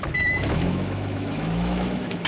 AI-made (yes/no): yes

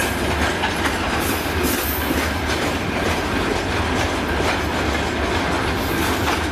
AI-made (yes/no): no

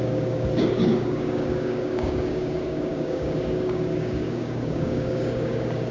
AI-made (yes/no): yes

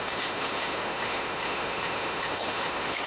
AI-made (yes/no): yes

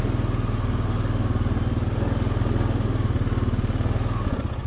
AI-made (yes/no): no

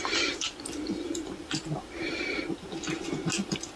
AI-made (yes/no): no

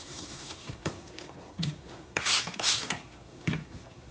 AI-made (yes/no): yes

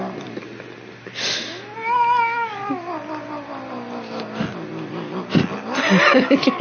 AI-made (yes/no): no